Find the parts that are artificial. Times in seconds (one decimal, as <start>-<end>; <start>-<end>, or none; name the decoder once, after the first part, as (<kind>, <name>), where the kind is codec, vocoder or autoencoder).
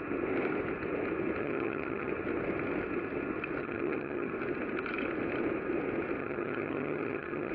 1.4-2.1 (vocoder, HiFi-GAN); 3.6-4.3; 6.2-7.5